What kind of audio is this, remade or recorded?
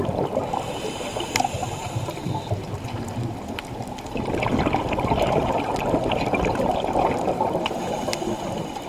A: recorded